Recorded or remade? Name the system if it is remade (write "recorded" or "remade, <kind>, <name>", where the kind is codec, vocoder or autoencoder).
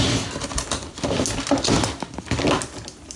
recorded